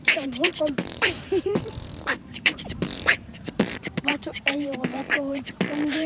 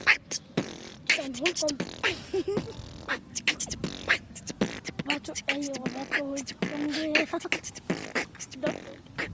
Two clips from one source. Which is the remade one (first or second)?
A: first